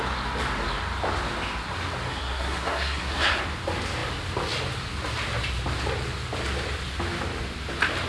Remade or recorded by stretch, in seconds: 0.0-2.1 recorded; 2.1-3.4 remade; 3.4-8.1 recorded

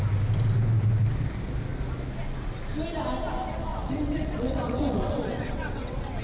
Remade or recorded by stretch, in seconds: 0.0-3.7 recorded; 3.7-6.2 remade